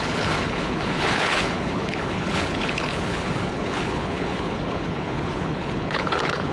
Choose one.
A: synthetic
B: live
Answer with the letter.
A